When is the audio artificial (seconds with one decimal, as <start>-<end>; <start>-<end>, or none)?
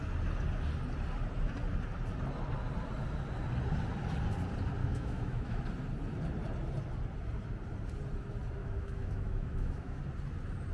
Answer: 4.8-5.6; 8.6-10.0